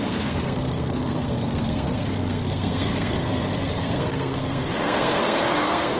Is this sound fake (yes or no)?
yes